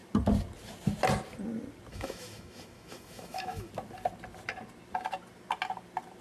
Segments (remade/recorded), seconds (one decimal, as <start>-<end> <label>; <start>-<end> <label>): 0.0-1.9 recorded; 1.9-3.7 remade; 3.7-6.2 recorded